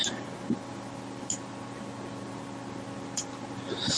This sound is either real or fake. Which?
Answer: real